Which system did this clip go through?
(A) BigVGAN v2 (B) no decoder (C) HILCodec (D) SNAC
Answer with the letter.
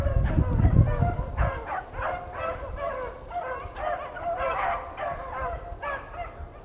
B